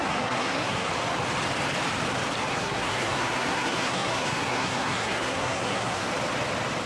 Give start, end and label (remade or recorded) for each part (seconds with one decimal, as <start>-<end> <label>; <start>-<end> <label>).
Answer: 0.0-0.9 remade; 0.9-2.5 recorded; 2.5-6.1 remade; 6.1-6.9 recorded